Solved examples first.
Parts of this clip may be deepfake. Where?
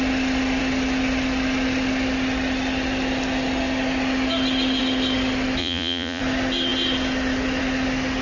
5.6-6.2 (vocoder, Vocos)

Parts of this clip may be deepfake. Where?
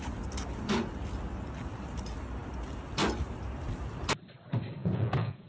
4.8-5.5 (vocoder, Vocos)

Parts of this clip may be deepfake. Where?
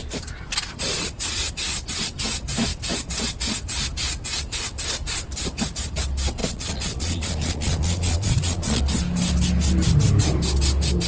6.4-8.8 (vocoder, Vocos)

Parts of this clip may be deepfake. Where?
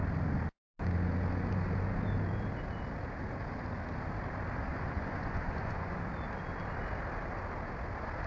4.7-6.0 (vocoder, Vocos)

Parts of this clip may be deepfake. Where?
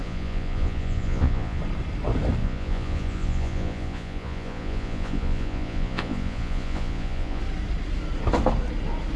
0.0-1.6 (vocoder, Vocos); 2.4-7.4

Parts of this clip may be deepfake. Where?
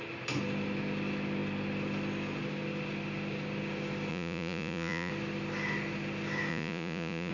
4.1-5.1 (vocoder, Vocos); 6.5-7.3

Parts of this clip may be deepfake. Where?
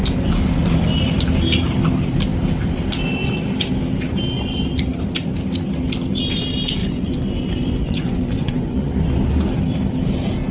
6.8-8.9 (vocoder, Vocos)